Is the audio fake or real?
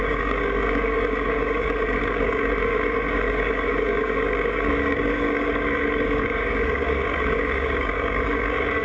fake